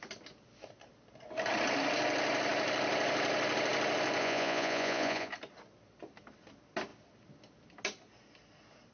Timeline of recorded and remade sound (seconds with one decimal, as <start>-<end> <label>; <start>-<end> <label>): 0.0-4.2 recorded; 4.2-5.3 remade; 5.3-8.9 recorded

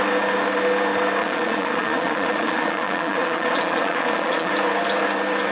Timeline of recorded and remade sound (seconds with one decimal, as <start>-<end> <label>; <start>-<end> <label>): 0.0-1.2 recorded; 1.2-4.5 remade; 4.5-5.5 recorded

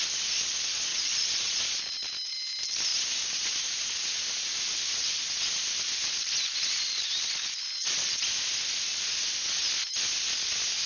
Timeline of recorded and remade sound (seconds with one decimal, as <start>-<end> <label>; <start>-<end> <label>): 0.0-0.9 recorded; 0.9-1.8 remade; 1.8-7.8 recorded; 7.8-8.3 remade; 8.3-10.9 recorded

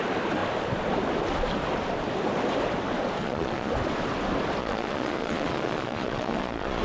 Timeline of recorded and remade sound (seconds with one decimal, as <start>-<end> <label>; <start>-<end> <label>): 0.0-3.2 recorded; 3.2-3.7 remade; 3.7-4.6 recorded; 4.6-6.8 remade

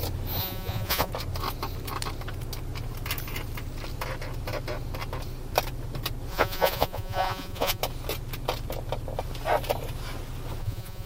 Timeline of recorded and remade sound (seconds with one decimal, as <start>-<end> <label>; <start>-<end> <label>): 0.0-0.4 recorded; 0.4-1.1 remade; 1.1-6.3 recorded; 6.3-7.8 remade; 7.8-10.6 recorded; 10.6-11.1 remade

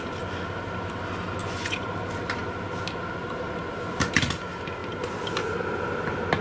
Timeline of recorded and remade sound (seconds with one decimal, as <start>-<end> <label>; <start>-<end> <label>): 0.0-1.4 recorded; 1.4-1.9 remade; 1.9-6.4 recorded